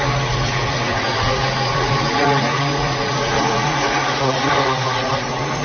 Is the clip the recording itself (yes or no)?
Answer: no